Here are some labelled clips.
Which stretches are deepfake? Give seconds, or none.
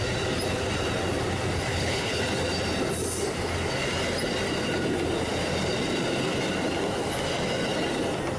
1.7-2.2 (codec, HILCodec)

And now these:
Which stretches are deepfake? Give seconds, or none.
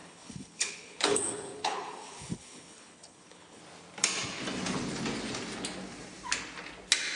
0.0-3.6 (codec, HILCodec)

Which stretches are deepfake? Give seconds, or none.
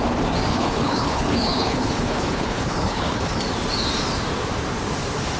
0.5-3.4 (codec, HILCodec)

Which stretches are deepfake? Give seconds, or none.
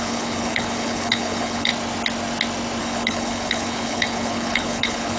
0.0-1.7 (codec, HILCodec); 2.8-5.2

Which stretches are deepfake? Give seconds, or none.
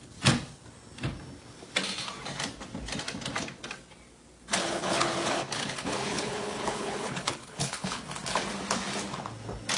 4.6-8.0 (codec, HILCodec)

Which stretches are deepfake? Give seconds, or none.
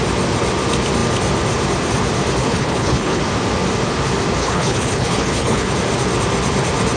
2.4-3.2 (codec, HILCodec); 4.4-5.7